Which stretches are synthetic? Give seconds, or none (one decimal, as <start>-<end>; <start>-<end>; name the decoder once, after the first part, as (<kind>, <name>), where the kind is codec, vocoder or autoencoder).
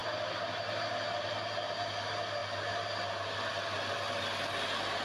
none